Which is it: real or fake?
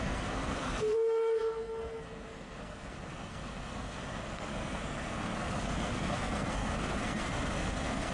fake